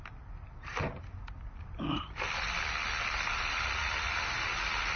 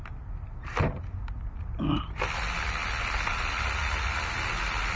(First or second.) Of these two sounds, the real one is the second